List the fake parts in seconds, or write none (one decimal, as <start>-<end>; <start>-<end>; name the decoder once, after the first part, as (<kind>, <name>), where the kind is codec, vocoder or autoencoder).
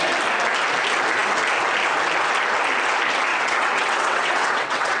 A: 3.3-5.0 (vocoder, WaveNeXt)